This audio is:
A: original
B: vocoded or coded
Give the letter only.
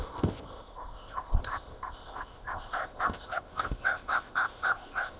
B